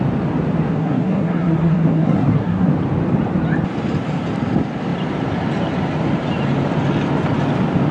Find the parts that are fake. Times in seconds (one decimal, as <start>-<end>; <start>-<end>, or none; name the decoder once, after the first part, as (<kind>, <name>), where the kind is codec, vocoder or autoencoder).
0.7-2.7 (codec, SNAC)